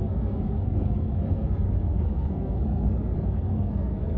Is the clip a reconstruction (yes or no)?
yes